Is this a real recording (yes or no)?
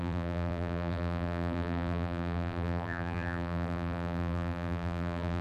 no